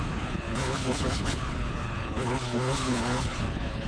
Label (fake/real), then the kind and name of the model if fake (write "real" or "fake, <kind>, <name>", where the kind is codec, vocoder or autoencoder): fake, codec, HILCodec